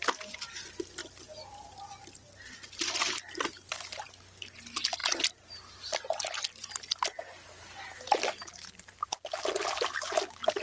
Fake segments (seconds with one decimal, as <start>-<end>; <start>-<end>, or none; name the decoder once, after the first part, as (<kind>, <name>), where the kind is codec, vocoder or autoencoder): none

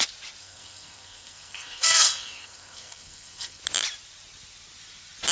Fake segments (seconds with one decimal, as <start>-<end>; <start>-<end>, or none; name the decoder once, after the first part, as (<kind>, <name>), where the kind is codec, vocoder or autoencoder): 0.4-3.6 (codec, SNAC)

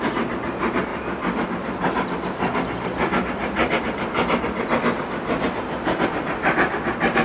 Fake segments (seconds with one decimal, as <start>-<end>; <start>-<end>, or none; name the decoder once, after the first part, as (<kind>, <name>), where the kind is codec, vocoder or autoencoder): none

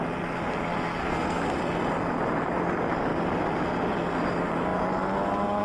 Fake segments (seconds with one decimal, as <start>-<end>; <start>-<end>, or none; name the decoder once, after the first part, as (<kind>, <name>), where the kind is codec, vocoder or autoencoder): 1.0-1.6 (codec, SNAC)

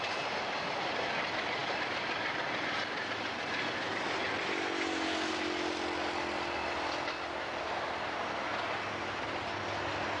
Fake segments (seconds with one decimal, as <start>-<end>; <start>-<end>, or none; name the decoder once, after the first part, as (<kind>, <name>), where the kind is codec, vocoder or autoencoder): none